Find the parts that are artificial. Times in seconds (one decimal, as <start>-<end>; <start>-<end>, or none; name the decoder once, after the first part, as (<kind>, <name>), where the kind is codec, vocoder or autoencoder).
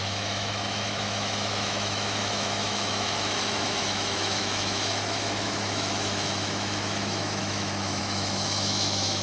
0.0-9.2 (autoencoder, DAC-VAE)